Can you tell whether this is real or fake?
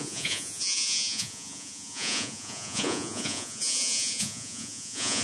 fake